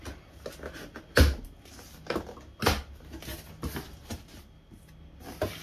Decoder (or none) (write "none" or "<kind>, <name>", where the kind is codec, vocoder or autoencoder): none